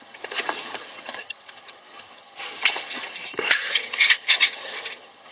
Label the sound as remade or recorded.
remade